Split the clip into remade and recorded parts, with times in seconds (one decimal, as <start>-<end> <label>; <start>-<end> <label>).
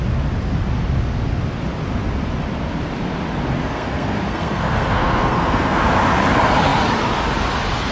0.0-3.6 recorded; 3.6-5.8 remade; 5.8-7.9 recorded